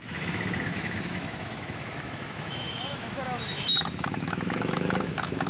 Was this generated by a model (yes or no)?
yes